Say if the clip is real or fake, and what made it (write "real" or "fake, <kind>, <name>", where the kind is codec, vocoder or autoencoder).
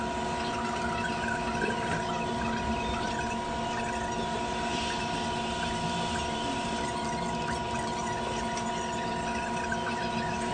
real